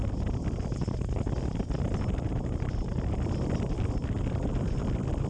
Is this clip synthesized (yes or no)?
no